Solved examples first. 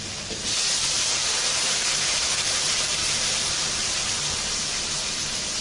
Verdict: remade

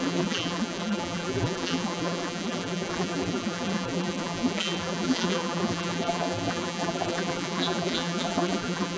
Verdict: remade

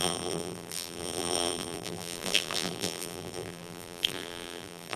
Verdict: remade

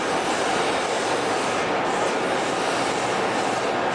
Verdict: recorded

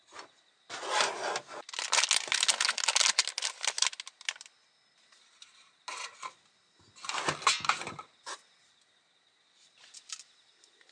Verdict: recorded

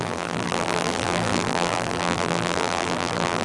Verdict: remade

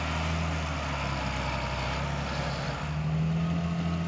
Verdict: recorded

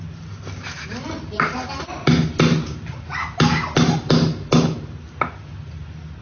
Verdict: recorded